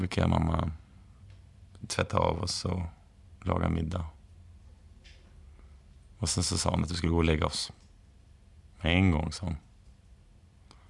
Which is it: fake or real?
real